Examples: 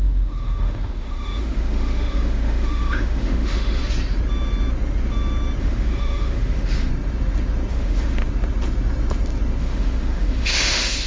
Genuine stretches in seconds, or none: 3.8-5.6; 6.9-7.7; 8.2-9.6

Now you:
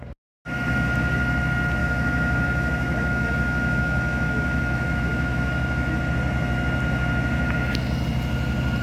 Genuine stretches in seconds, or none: 0.0-1.8; 6.0-8.8

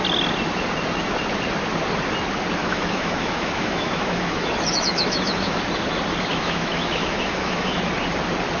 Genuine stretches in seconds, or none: 0.0-2.6; 5.6-6.3; 7.8-8.6

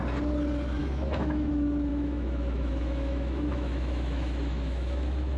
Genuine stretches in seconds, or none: 0.0-0.8; 1.5-1.9

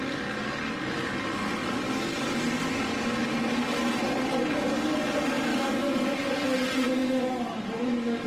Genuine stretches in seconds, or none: 0.0-5.5; 6.0-7.0

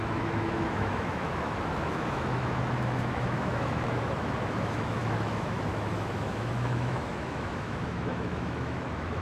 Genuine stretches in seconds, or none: none

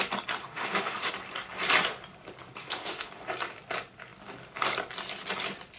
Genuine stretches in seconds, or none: 0.0-0.4; 1.1-2.6; 3.1-5.8

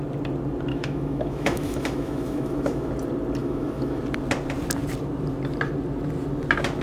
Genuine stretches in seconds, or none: 0.0-0.7; 2.9-3.4; 4.0-6.8